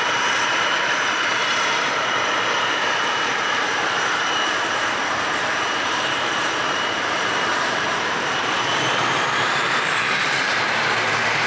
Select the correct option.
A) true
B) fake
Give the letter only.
B